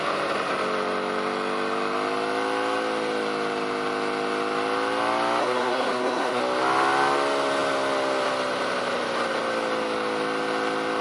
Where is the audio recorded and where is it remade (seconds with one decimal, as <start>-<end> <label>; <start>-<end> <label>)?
0.0-5.4 recorded; 5.4-6.4 remade; 6.4-11.0 recorded